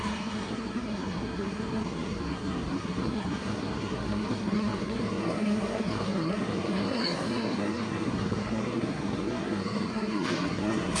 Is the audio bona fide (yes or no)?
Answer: no